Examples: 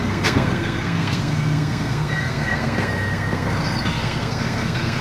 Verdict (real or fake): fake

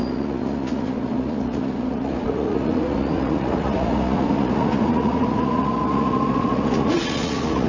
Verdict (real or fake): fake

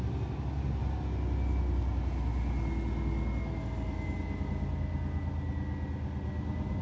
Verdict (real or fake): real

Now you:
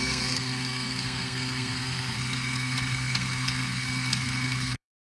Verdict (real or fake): fake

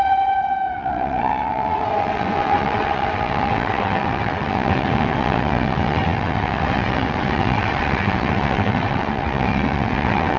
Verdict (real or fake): fake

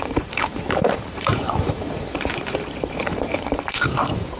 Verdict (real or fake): fake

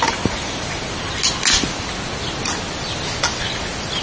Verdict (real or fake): real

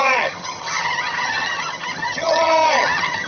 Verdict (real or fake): fake